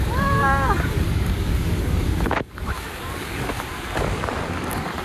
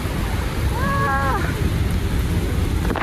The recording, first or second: second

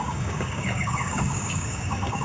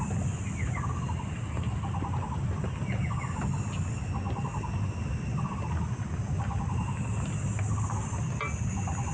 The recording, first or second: second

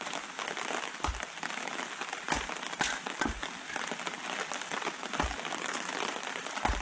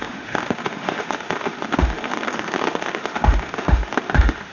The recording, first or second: first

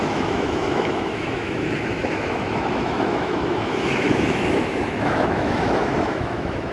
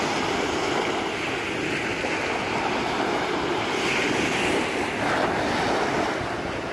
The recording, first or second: second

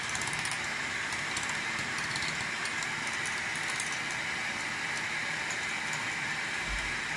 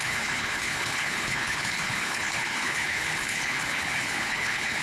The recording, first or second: first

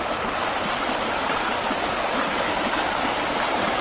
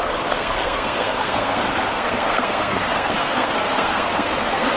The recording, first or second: first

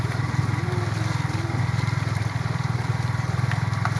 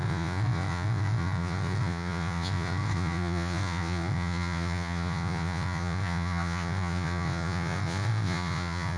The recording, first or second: first